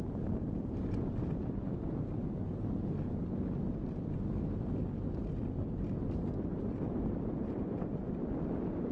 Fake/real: real